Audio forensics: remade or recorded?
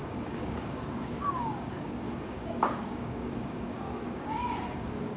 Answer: remade